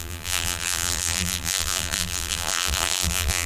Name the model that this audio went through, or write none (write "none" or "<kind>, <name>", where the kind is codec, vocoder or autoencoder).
vocoder, BigVGAN v2